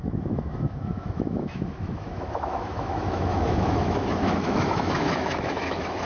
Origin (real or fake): fake